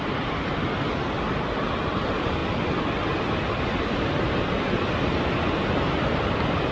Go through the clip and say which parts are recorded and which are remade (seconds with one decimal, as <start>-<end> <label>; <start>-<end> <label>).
0.0-6.7 recorded